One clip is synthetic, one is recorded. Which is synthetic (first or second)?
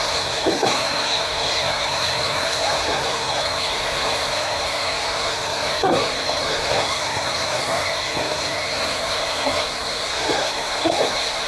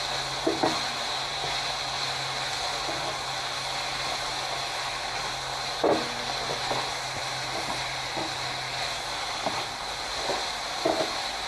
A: first